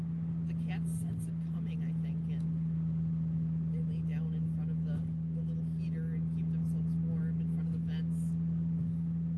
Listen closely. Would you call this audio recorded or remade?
recorded